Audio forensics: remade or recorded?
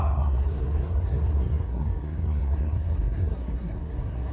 remade